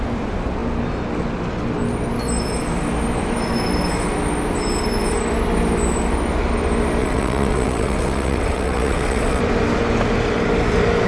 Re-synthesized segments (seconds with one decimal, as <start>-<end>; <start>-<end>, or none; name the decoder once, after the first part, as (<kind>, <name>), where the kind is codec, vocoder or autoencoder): 7.0-9.4 (vocoder, WaveNeXt)